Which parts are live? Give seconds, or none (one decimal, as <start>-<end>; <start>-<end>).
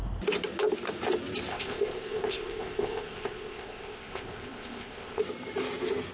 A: 0.0-1.5; 5.2-6.1